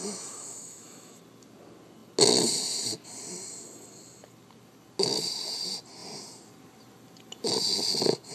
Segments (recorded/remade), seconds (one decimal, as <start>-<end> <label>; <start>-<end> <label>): 0.0-1.2 remade; 1.2-8.3 recorded